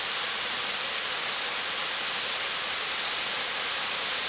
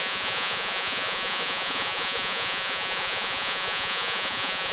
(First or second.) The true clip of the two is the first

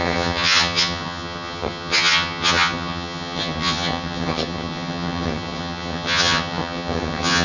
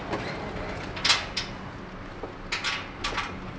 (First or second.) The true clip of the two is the second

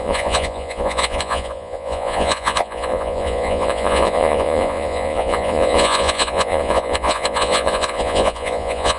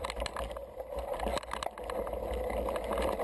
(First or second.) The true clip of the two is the second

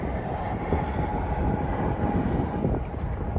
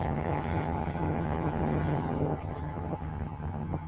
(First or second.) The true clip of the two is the first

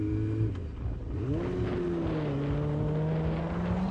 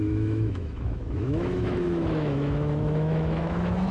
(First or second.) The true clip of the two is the first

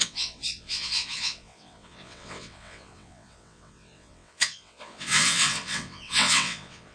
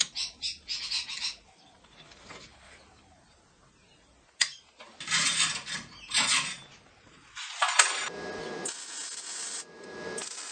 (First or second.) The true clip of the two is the second